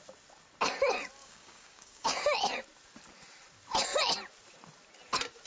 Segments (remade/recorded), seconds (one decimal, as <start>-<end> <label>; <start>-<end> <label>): 0.0-1.2 recorded; 1.2-2.2 remade; 2.2-5.5 recorded